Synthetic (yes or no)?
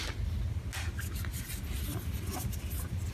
no